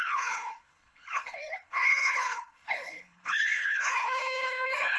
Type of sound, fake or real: fake